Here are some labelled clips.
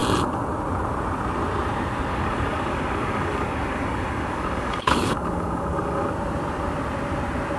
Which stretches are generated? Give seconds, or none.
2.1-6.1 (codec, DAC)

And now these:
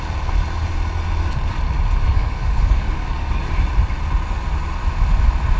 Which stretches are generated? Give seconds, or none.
2.1-3.4 (codec, DAC)

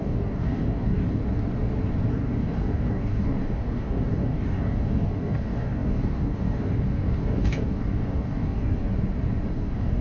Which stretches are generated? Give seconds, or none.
0.0-1.2 (codec, DAC); 2.1-8.8; 9.5-10.0

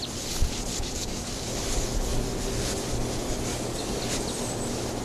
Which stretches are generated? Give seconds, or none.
0.7-1.3 (codec, DAC); 3.5-4.0